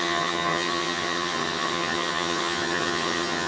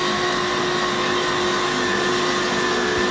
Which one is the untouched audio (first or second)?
second